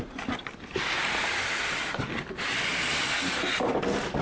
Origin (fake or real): real